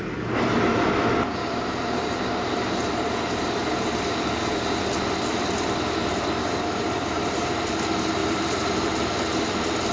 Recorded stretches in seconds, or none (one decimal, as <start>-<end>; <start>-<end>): 0.0-1.4; 4.8-6.4; 7.5-8.2; 8.9-9.9